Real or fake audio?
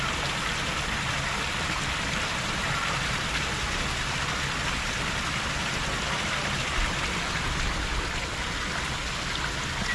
real